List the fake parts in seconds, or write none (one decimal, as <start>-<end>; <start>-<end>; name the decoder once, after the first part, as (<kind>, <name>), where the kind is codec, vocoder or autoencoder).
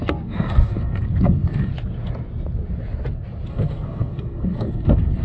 0.0-1.7 (codec, SNAC); 3.5-5.2